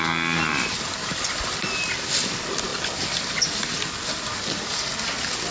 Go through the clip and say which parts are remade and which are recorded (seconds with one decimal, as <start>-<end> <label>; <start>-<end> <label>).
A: 0.0-5.5 recorded